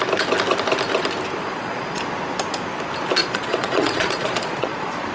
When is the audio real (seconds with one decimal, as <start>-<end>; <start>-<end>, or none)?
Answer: 0.0-1.4; 2.0-3.2